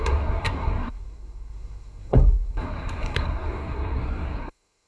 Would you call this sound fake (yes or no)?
yes